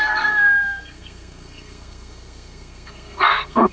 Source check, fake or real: fake